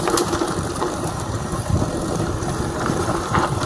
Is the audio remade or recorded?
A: remade